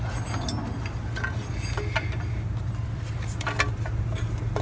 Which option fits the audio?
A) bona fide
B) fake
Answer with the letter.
A